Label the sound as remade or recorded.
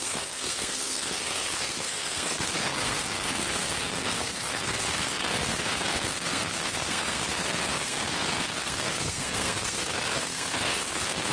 remade